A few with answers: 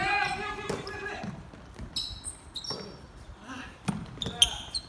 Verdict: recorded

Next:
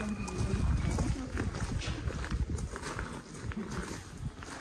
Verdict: recorded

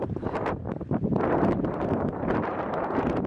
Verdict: remade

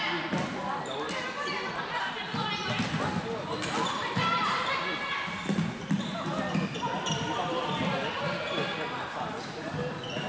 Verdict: recorded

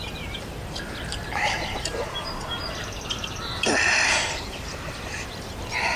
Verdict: remade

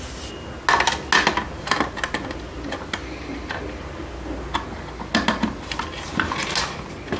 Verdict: recorded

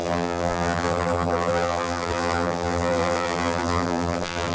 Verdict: remade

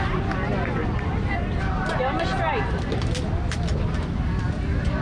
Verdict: recorded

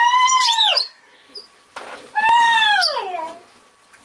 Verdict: remade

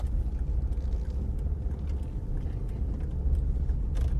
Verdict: recorded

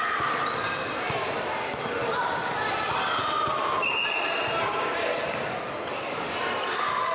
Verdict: recorded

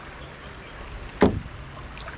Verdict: recorded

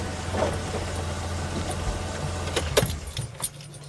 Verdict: recorded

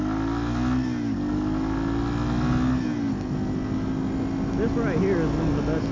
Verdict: recorded